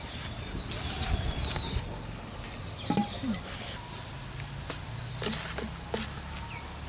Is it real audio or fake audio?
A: real